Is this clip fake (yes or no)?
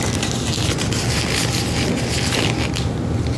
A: no